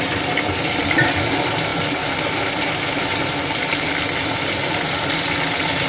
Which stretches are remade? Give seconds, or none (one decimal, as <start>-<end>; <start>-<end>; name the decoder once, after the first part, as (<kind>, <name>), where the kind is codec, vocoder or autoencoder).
none